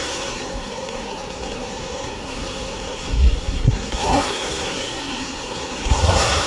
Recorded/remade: remade